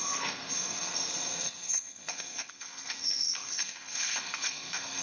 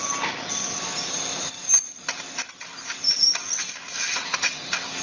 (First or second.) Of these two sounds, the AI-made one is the first